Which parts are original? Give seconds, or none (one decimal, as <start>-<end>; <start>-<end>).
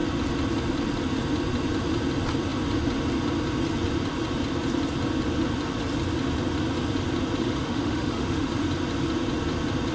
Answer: 0.0-7.4; 8.5-9.9